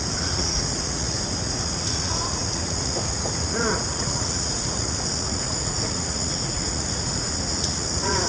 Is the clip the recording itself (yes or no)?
no